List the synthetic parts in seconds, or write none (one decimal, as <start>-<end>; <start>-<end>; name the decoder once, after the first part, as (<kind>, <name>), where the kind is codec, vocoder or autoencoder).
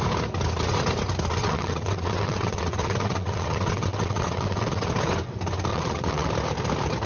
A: 1.4-4.9 (vocoder, WaveNeXt); 5.7-6.3